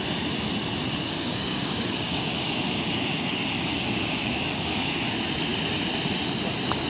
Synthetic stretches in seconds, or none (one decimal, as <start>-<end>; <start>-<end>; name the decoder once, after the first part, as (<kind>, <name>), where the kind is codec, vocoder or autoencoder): 1.0-5.0 (codec, DAC)